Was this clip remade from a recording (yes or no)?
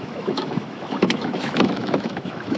yes